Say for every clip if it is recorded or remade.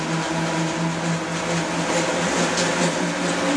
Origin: recorded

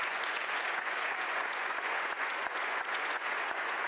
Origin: remade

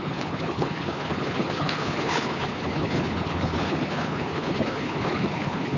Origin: remade